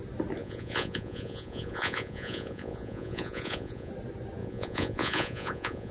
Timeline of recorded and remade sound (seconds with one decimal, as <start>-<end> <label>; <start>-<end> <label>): 0.0-0.4 recorded; 0.4-3.9 remade; 3.9-4.4 recorded; 4.4-5.9 remade